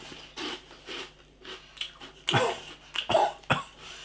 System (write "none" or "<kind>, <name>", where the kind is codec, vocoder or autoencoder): none